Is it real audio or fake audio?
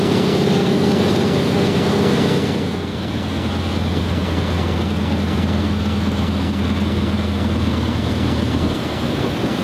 fake